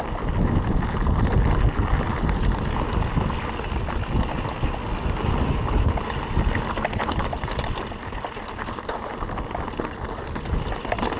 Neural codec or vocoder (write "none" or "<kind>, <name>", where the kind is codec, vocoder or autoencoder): none